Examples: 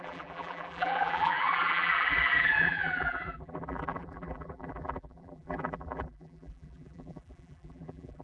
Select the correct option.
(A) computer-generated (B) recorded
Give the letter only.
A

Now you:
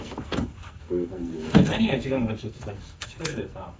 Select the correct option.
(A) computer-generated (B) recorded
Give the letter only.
A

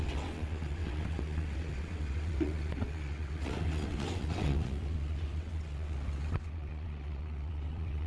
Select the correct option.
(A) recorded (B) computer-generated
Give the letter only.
B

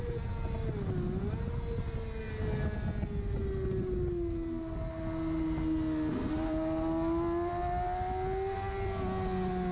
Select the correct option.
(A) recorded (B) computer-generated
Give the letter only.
A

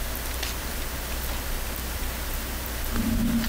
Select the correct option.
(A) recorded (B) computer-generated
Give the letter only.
A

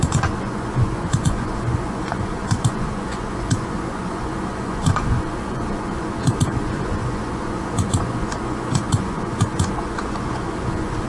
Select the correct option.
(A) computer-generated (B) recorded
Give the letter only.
A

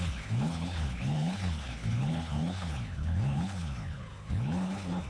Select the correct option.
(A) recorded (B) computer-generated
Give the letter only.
B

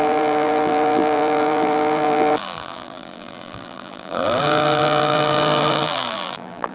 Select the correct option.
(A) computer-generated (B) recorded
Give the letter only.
A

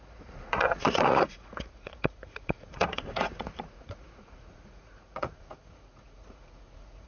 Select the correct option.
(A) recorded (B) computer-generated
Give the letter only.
B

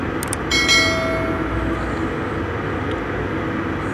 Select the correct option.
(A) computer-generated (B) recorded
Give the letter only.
B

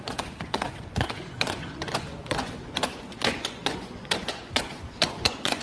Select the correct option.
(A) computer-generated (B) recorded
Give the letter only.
A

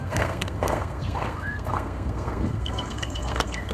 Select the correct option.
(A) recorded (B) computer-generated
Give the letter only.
B